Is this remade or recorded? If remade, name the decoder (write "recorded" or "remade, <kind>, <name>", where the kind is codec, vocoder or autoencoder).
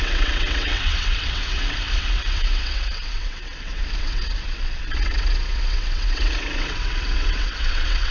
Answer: remade, vocoder, WaveNeXt